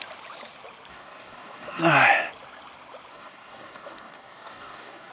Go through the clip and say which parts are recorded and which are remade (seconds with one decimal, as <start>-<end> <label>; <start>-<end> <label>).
0.0-0.9 recorded; 0.9-1.8 remade; 1.8-3.1 recorded; 3.1-5.1 remade